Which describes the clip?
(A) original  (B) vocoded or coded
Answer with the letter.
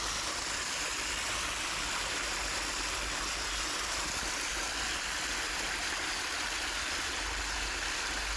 A